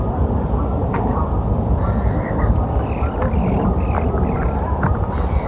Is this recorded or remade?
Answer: remade